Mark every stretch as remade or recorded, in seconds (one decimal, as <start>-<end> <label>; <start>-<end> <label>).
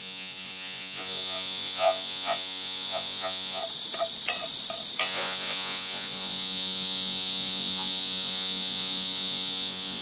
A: 0.0-3.6 remade; 3.6-5.0 recorded; 5.0-10.0 remade